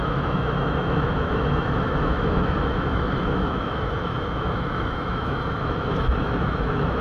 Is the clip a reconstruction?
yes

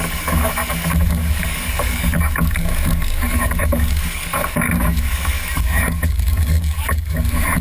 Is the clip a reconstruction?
yes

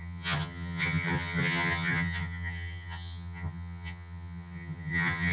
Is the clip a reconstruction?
yes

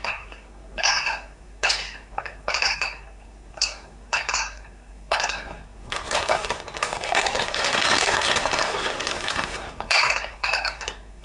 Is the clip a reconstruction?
yes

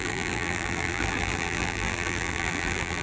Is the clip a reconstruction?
yes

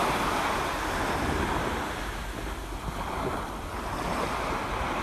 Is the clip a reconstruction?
no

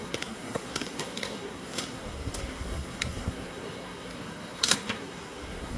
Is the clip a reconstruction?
yes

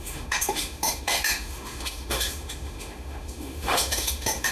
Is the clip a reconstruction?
yes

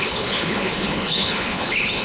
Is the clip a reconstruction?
yes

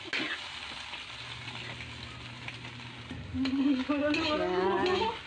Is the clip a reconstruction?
no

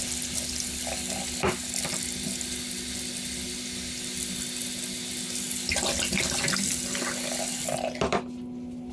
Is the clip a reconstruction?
no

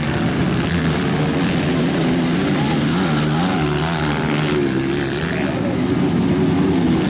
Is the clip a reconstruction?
no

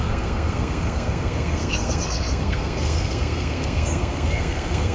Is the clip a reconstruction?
yes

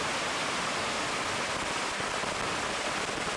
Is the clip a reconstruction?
no